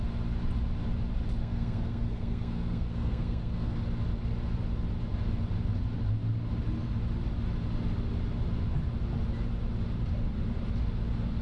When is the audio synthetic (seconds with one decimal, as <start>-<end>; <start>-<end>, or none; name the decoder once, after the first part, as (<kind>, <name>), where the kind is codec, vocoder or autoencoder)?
1.4-3.8 (codec, SNAC)